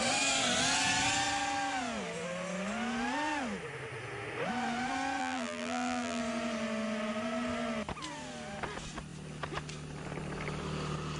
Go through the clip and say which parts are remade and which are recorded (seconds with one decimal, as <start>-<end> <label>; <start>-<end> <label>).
0.0-5.2 recorded; 5.2-6.2 remade; 6.2-11.2 recorded